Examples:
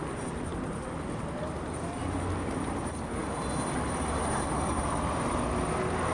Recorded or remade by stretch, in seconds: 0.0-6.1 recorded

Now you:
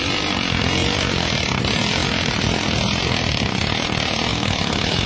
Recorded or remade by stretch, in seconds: 0.0-4.3 recorded; 4.3-5.1 remade

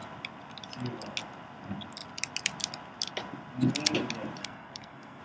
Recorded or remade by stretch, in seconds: 0.0-4.4 recorded; 4.4-5.2 remade